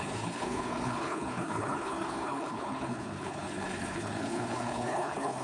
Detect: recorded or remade remade